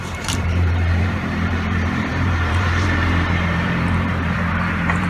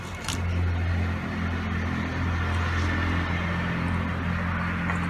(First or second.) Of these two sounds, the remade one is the first